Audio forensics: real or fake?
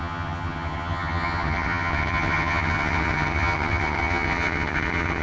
fake